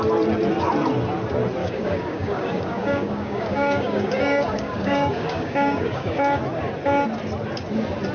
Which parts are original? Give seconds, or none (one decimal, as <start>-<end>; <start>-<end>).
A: 0.0-1.6; 6.4-8.1